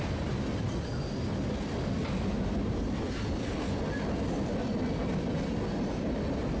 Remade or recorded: recorded